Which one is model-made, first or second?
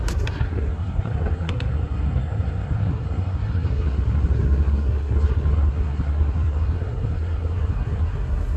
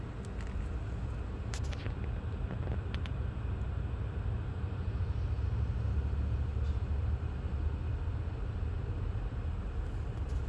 first